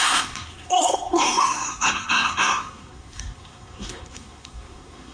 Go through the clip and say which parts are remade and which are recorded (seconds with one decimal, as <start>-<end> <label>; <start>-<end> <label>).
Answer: 0.0-5.1 remade